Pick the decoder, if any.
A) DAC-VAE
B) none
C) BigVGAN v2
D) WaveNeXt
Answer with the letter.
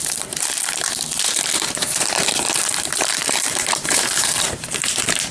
C